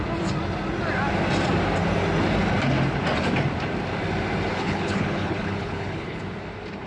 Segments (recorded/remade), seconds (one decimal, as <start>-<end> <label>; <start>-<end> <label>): 0.0-4.5 recorded; 4.5-6.2 remade; 6.2-6.9 recorded